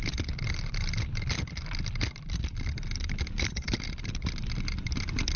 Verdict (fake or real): real